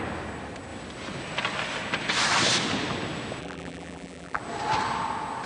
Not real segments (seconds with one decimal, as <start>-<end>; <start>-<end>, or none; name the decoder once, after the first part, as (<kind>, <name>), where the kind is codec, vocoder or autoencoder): 3.4-4.4 (vocoder, BigVGAN v2)